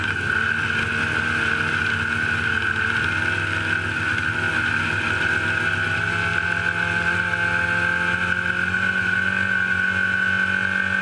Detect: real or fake real